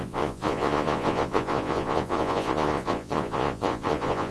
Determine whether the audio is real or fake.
fake